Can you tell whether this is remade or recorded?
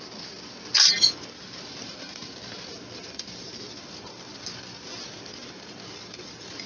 recorded